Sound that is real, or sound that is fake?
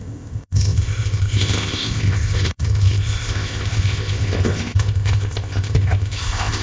fake